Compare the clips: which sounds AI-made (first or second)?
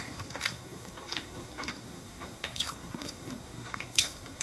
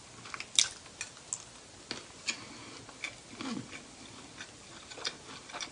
first